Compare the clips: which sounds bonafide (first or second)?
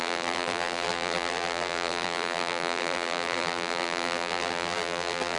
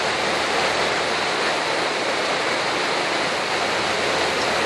second